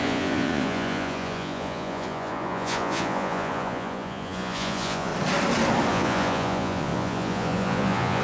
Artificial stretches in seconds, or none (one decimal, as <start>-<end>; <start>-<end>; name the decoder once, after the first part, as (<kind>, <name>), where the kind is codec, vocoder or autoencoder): 0.0-5.1 (vocoder, Vocos); 5.9-8.2